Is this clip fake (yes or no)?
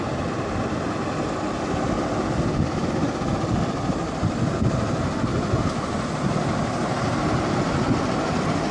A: no